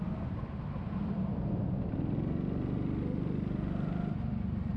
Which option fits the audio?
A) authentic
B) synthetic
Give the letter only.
A